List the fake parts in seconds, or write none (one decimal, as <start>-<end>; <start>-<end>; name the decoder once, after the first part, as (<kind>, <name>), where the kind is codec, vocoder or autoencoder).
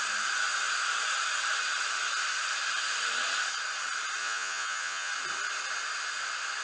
4.2-5.1 (vocoder, Vocos)